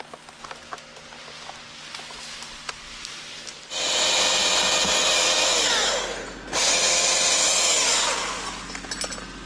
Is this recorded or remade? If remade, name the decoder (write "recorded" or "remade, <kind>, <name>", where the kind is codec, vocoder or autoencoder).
recorded